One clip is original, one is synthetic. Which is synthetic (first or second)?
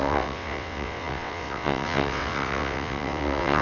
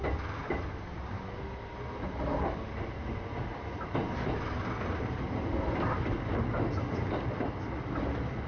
first